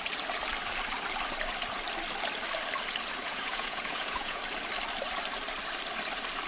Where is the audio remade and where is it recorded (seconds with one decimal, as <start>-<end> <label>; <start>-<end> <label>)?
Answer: 0.0-3.2 recorded; 3.2-4.4 remade; 4.4-6.5 recorded